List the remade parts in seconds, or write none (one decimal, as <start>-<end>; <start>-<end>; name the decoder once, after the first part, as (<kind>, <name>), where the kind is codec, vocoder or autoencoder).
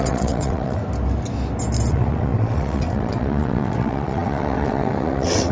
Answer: 0.0-0.8 (vocoder, WaveNeXt); 1.9-5.5